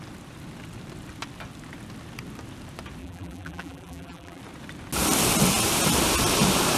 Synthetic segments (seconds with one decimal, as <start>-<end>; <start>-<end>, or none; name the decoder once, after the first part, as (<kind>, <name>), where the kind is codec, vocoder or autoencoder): 3.0-4.4 (vocoder, BigVGAN v2)